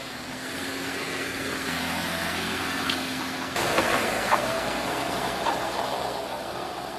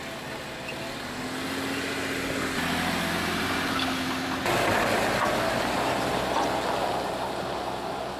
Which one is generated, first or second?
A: first